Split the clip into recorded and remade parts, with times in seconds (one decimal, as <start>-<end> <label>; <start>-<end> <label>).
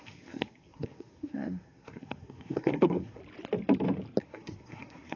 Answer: 0.0-3.2 remade; 3.2-4.2 recorded; 4.2-5.2 remade